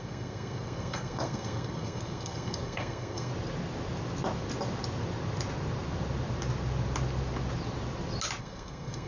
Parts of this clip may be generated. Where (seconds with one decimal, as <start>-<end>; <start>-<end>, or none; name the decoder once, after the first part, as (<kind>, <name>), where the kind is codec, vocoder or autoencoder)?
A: 0.0-3.3 (codec, SNAC); 8.4-9.1